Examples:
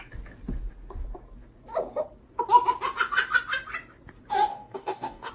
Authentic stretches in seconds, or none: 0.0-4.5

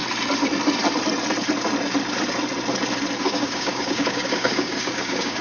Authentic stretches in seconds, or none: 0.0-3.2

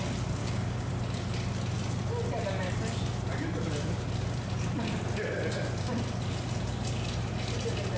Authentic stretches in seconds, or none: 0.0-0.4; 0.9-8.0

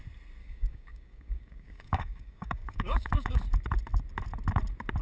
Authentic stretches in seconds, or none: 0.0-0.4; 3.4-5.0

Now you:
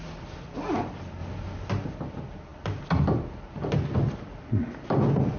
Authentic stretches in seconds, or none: 0.0-5.4

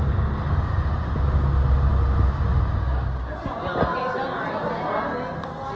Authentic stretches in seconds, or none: 0.0-5.8